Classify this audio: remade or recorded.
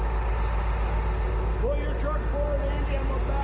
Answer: recorded